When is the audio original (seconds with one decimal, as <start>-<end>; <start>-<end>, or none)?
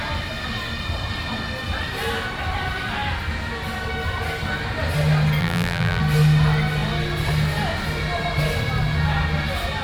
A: 0.0-5.4; 6.0-9.8